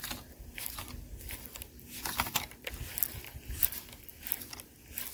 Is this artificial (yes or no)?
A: no